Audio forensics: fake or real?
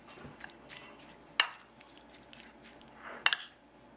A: real